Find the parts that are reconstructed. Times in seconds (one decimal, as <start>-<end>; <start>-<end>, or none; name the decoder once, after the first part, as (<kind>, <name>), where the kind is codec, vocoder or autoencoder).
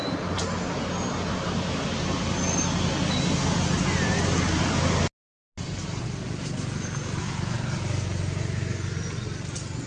none